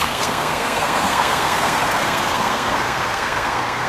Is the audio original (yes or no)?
no